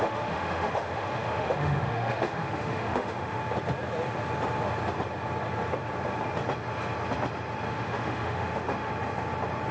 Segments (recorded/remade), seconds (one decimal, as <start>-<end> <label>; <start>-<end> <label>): 0.0-3.4 remade; 3.4-7.7 recorded; 7.7-8.9 remade; 8.9-9.7 recorded